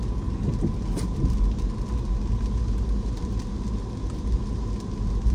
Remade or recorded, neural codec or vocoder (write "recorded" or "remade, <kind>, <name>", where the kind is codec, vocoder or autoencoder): recorded